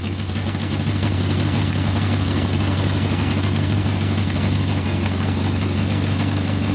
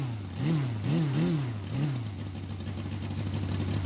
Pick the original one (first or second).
second